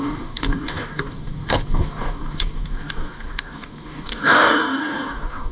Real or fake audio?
fake